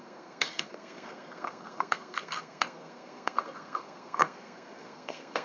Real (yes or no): no